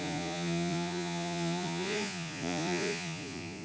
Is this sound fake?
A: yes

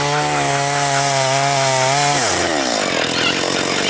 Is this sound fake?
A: no